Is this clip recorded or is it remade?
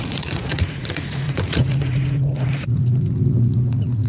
remade